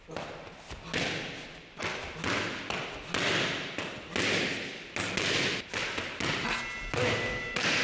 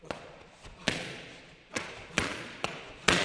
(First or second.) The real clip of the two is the first